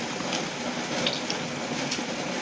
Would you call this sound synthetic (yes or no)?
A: no